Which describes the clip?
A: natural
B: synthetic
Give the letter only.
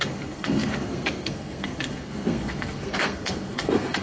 B